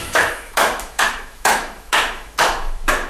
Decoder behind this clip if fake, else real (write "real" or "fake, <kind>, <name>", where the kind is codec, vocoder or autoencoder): fake, autoencoder, DAC-VAE